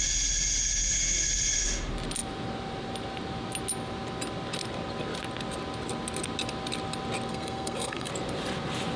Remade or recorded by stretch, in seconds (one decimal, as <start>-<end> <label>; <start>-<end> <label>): 0.0-7.3 recorded; 7.3-8.1 remade; 8.1-9.0 recorded